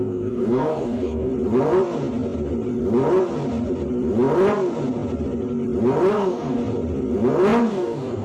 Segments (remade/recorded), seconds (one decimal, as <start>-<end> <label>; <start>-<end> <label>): 0.0-1.3 remade; 1.3-6.1 recorded; 6.1-6.6 remade; 6.6-7.7 recorded; 7.7-8.2 remade